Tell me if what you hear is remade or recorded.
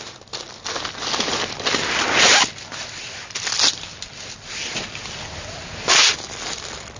recorded